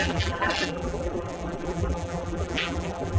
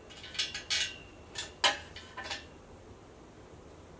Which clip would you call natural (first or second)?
second